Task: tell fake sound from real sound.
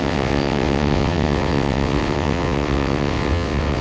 fake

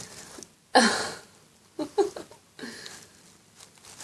real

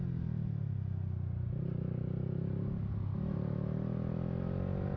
real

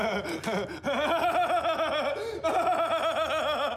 real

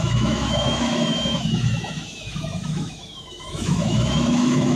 fake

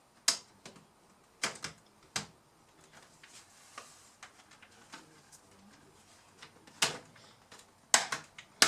real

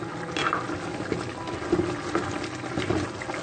real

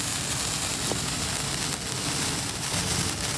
real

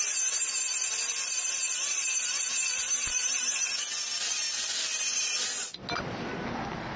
real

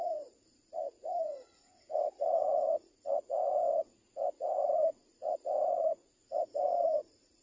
fake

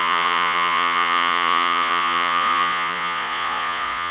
fake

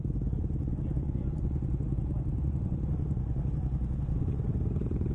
fake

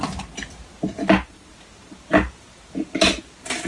real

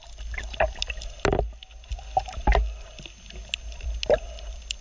real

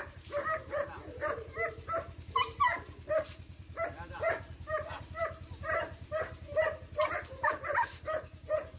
fake